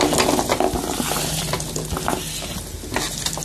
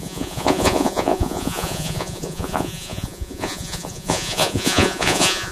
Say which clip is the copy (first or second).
second